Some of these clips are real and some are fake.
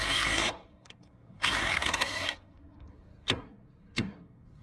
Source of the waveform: fake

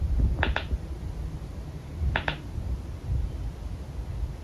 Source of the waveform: real